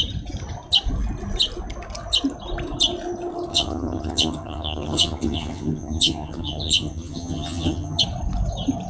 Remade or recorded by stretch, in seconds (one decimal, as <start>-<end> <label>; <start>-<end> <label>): 0.0-3.5 recorded; 3.5-8.0 remade; 8.0-8.9 recorded